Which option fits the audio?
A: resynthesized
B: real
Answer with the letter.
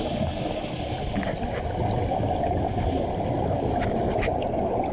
B